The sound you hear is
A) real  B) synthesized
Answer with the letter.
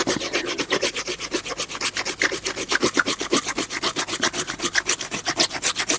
A